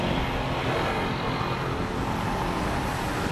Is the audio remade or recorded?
recorded